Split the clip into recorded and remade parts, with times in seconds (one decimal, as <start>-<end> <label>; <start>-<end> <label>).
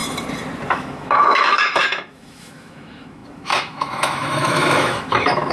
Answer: 0.0-0.7 recorded; 0.7-5.5 remade